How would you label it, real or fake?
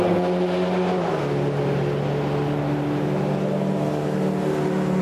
real